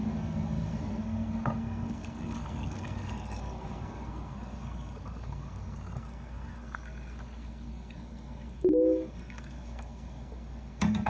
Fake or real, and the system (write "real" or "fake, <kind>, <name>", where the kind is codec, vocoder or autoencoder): fake, codec, SNAC